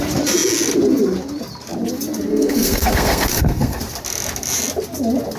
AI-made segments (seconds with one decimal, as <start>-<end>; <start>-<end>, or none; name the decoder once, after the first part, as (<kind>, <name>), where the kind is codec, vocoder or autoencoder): 2.3-3.8 (codec, SNAC)